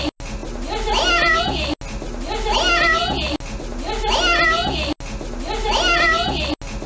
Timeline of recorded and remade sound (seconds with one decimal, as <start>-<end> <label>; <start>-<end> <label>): 0.0-6.9 recorded